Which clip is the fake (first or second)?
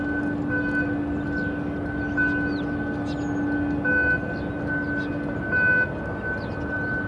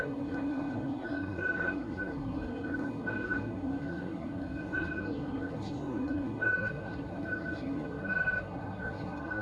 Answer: second